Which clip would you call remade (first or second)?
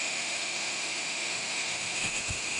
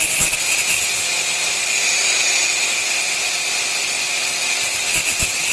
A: first